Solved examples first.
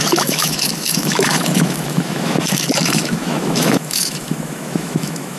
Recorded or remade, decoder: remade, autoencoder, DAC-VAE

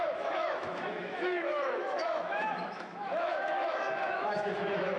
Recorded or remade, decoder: remade, autoencoder, DAC-VAE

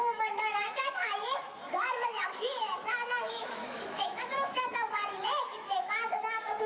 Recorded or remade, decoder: remade, autoencoder, DAC-VAE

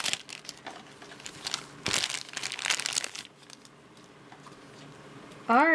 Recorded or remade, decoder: recorded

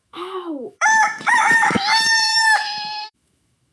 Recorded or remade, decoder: remade, autoencoder, DAC-VAE